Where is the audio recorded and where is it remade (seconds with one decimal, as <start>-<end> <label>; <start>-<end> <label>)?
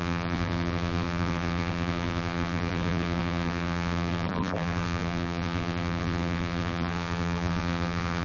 0.0-8.2 remade